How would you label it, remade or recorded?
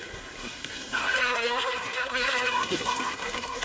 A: remade